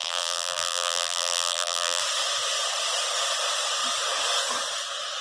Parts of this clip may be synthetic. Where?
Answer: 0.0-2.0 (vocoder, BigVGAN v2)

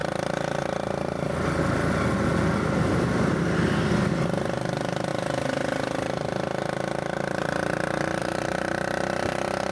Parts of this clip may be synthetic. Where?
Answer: none

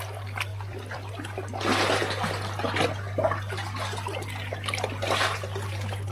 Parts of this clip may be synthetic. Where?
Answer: 0.5-1.1 (vocoder, BigVGAN v2)

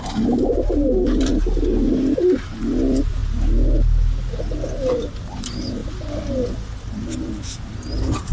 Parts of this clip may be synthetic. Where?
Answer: 0.0-1.3 (vocoder, BigVGAN v2); 2.4-3.2; 4.4-5.8; 7.3-8.3

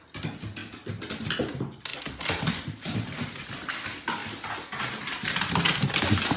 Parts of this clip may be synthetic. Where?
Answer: 1.9-2.5 (vocoder, BigVGAN v2)

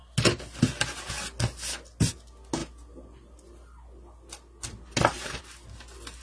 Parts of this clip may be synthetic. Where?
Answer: none